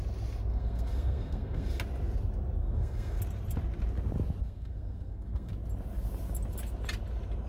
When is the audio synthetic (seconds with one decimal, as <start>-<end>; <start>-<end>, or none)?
0.5-1.8; 2.6-3.2; 4.4-5.5